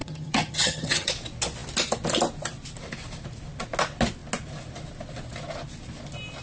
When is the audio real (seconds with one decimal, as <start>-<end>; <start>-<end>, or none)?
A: 1.1-6.4